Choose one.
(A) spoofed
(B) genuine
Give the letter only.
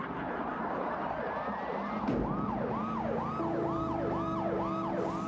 B